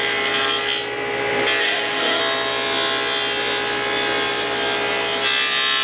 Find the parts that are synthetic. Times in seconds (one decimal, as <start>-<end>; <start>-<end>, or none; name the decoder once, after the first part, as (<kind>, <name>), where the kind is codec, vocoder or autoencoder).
1.6-2.2 (autoencoder, DAC-VAE)